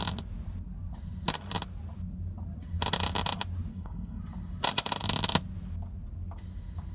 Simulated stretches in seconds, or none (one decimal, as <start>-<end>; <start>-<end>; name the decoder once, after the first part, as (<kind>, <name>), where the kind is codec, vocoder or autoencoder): 3.7-4.2 (codec, SNAC)